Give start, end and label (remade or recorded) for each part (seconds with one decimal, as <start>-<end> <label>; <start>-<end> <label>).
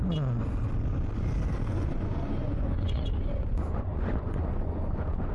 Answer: 0.0-1.7 recorded; 1.7-5.3 remade